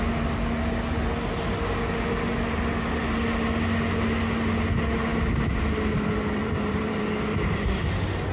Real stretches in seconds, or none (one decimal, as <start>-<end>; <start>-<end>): 0.0-6.4; 7.0-8.3